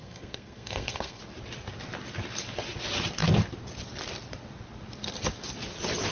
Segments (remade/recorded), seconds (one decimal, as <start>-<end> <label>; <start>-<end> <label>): 0.0-1.2 remade; 1.2-6.1 recorded